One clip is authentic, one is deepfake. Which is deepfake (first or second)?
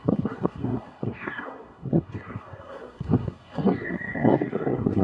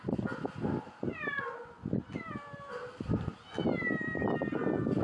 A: first